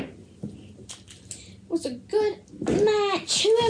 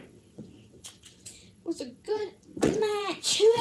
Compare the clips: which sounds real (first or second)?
first